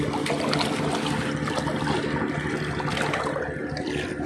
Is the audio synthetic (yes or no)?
no